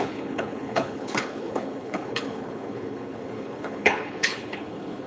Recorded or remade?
remade